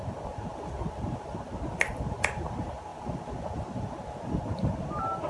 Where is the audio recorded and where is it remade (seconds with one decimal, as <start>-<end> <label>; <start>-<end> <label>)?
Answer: 0.0-5.3 recorded